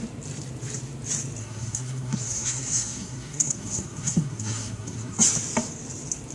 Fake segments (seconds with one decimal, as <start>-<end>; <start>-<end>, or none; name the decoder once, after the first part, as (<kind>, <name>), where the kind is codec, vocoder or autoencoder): 1.4-5.2 (codec, SNAC)